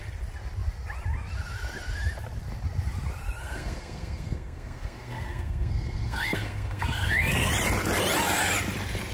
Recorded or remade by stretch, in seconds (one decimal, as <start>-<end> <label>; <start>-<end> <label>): 0.0-3.4 recorded; 3.4-7.5 remade; 7.5-9.1 recorded